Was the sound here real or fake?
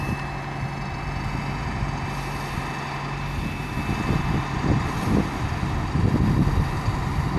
real